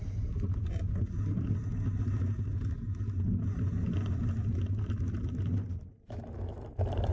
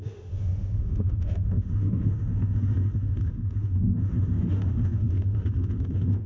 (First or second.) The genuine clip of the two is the first